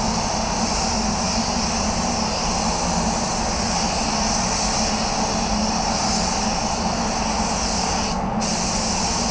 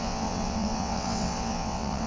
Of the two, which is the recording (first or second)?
first